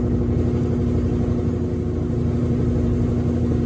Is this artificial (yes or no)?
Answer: no